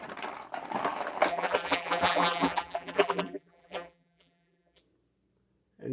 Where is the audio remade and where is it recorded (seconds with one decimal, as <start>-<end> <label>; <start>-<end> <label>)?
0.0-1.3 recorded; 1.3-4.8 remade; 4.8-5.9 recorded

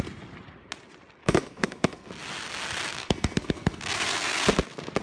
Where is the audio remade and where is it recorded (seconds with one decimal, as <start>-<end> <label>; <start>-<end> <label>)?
0.0-1.2 recorded; 1.2-2.1 remade; 2.1-3.0 recorded; 3.0-3.8 remade; 3.8-5.0 recorded

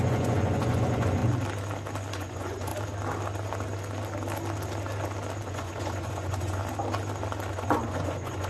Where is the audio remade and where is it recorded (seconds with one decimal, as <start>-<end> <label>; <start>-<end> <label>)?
0.0-1.2 remade; 1.2-2.1 recorded; 2.1-2.7 remade; 2.7-5.5 recorded; 5.5-6.6 remade; 6.6-7.5 recorded; 7.5-8.5 remade

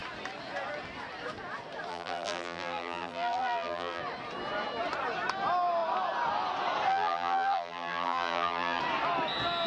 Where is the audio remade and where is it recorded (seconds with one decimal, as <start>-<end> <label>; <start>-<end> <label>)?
0.0-1.9 recorded; 1.9-4.0 remade; 4.0-6.9 recorded; 6.9-8.8 remade; 8.8-9.7 recorded

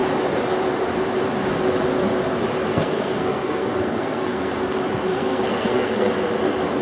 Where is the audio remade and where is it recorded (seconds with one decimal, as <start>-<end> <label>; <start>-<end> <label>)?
0.0-2.7 recorded; 2.7-4.5 remade; 4.5-5.1 recorded; 5.1-6.1 remade; 6.1-6.8 recorded

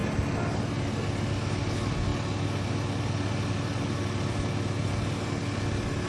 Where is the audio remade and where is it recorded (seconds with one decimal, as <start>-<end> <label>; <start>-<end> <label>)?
0.0-6.1 recorded